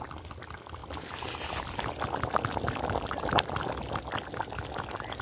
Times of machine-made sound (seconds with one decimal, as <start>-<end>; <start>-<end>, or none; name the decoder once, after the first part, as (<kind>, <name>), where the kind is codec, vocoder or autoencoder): 0.8-3.9 (vocoder, BigVGAN v2)